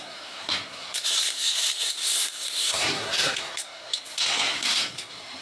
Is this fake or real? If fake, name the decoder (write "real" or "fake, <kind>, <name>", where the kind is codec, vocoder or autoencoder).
fake, codec, SNAC